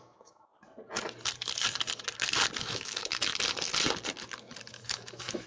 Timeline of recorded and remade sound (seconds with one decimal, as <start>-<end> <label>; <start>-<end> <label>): 0.0-0.5 remade; 0.5-2.6 recorded; 2.6-3.3 remade; 3.3-4.7 recorded; 4.7-5.5 remade